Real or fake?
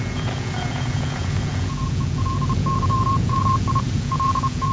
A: fake